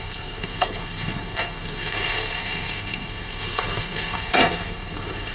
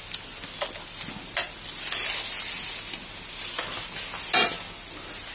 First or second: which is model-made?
first